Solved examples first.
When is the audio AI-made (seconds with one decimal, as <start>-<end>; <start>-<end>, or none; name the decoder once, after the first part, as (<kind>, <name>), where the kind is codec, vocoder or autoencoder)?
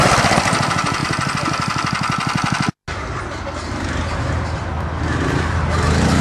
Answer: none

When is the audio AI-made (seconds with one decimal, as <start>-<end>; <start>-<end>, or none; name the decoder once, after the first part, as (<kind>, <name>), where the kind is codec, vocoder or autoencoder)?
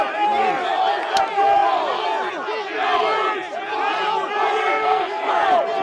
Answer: 4.6-5.3 (codec, SNAC)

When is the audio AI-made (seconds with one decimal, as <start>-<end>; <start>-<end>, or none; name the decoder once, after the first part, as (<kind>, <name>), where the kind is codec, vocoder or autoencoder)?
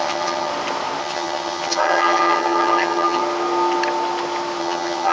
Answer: 0.0-0.5 (vocoder, HiFi-GAN); 1.0-3.2; 4.6-5.1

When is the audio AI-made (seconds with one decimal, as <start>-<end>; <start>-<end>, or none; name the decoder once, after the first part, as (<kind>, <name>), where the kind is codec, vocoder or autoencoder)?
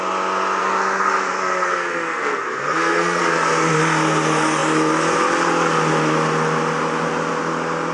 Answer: 0.6-3.2 (codec, SNAC)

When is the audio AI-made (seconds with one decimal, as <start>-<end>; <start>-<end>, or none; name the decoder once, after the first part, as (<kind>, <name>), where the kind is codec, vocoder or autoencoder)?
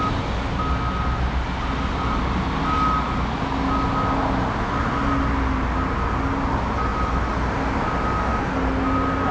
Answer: none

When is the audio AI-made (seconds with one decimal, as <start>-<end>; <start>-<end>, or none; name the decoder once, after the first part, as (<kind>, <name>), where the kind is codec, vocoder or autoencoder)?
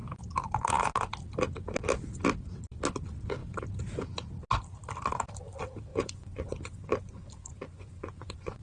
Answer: 5.9-8.6 (vocoder, Vocos)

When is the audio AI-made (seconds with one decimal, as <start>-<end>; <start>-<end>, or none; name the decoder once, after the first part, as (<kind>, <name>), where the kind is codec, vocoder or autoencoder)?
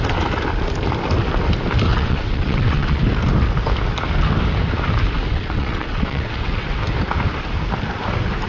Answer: 1.9-3.0 (vocoder, WaveNeXt); 5.3-6.7